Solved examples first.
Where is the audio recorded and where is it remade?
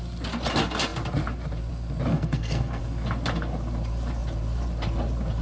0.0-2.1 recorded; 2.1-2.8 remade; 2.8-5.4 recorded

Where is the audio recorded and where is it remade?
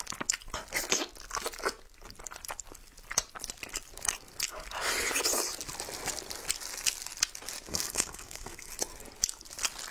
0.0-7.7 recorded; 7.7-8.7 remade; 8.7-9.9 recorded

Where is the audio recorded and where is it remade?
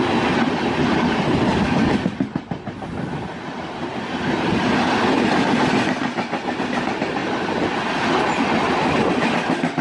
0.0-9.8 recorded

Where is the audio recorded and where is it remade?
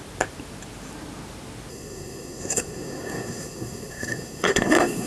0.0-1.7 recorded; 1.7-5.1 remade